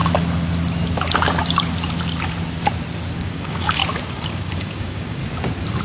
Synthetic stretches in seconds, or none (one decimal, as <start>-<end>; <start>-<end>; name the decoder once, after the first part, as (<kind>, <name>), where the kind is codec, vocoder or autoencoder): 3.2-3.8 (codec, DAC); 4.3-5.2